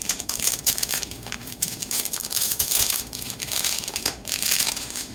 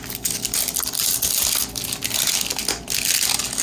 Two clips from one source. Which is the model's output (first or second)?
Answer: first